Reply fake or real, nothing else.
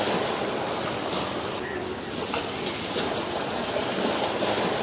real